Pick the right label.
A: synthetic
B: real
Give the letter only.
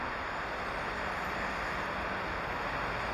B